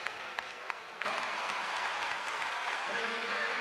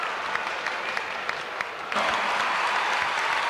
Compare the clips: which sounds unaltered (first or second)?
second